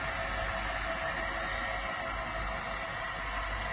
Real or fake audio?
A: real